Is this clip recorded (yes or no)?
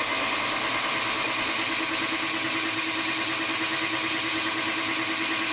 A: yes